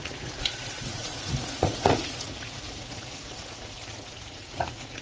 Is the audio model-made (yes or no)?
yes